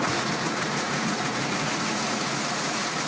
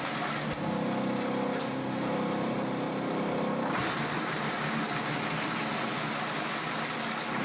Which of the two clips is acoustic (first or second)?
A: second